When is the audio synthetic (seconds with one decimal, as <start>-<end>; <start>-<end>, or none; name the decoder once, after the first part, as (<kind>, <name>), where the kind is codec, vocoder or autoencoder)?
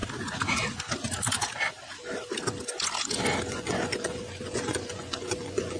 3.5-5.8 (vocoder, Vocos)